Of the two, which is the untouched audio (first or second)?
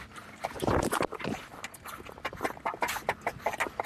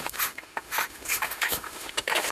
first